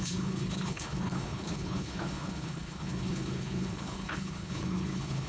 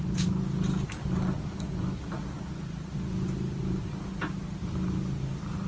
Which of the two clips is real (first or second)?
second